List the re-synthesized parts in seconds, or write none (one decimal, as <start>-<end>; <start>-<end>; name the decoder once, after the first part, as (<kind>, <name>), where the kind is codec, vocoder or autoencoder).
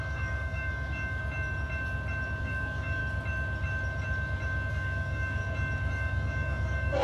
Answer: 0.0-1.2 (codec, DAC); 2.4-3.0; 4.7-5.4; 5.9-7.0